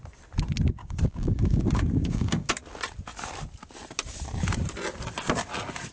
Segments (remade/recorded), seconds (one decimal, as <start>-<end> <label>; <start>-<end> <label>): 0.0-0.8 recorded; 0.8-2.5 remade; 2.5-5.9 recorded